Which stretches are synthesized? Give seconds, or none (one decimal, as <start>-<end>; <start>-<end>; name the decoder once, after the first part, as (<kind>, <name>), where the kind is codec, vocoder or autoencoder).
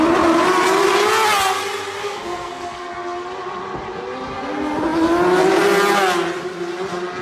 2.0-2.9 (codec, SNAC)